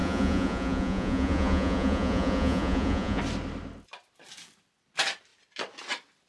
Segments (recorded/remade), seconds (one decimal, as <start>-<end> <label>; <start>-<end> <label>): 0.0-3.2 remade; 3.2-6.3 recorded